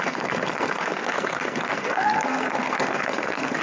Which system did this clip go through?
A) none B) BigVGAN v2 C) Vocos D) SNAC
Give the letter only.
D